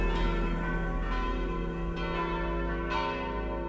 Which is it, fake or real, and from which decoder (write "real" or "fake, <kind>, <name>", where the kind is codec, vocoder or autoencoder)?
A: real